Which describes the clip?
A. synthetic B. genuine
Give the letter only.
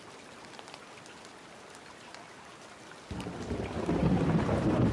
B